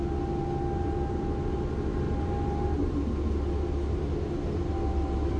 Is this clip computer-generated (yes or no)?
no